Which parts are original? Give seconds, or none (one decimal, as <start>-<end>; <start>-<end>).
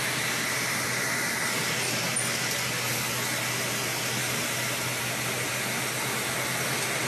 0.0-7.1